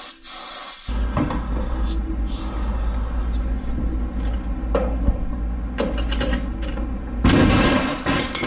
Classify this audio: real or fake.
real